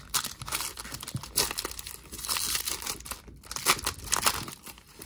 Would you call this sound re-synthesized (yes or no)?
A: no